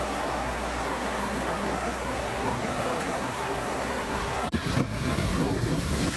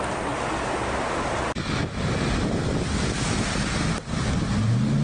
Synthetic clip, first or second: first